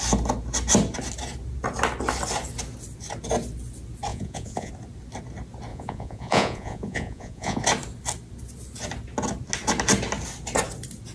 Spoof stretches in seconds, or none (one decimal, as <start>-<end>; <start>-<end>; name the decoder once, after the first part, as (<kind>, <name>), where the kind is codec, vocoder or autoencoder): 4.1-4.7 (vocoder, Vocos); 5.7-7.6